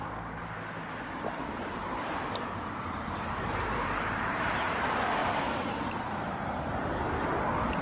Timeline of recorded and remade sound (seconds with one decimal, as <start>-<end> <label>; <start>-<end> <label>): 0.0-1.4 recorded; 1.4-4.5 remade; 4.5-5.2 recorded; 5.2-5.7 remade; 5.7-7.8 recorded